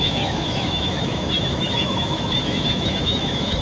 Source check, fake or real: fake